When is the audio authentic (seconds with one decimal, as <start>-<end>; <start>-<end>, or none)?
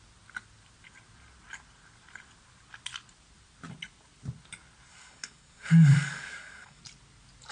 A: 0.0-4.9; 6.8-7.5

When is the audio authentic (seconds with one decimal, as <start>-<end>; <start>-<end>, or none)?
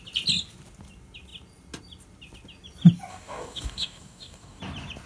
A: 0.0-3.1; 4.6-5.1